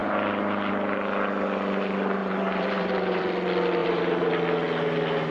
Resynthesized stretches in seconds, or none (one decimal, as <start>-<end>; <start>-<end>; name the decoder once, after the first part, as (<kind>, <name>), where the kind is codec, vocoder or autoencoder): 2.2-3.2 (vocoder, BigVGAN v2); 3.8-4.3